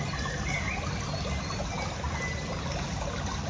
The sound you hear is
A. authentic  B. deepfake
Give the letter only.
A